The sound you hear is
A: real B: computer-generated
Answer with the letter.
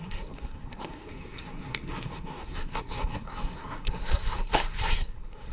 B